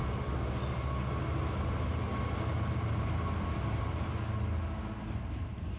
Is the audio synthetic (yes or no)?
no